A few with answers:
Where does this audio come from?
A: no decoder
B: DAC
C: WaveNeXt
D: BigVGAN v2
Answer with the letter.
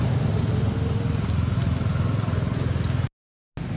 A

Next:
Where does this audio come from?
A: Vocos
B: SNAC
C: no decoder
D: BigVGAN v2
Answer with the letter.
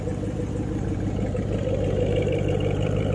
D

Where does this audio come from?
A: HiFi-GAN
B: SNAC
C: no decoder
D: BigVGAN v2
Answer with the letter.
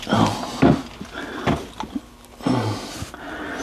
C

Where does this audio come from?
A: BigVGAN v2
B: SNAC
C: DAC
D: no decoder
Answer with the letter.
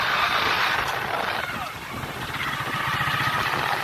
D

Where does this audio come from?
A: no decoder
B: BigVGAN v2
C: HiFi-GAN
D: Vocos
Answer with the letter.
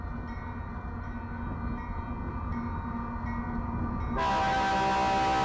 A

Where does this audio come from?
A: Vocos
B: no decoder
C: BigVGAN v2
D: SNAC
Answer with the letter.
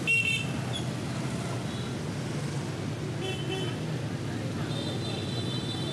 B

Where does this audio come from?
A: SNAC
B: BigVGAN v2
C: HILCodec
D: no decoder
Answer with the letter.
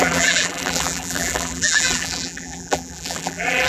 B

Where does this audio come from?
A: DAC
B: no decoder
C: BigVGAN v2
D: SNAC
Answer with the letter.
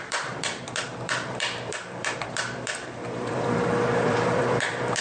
C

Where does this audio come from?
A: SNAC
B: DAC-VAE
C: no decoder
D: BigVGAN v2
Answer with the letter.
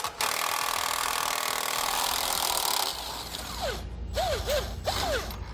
C